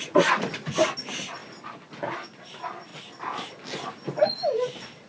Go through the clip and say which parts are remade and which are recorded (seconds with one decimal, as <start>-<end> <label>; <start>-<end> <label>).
0.0-5.1 recorded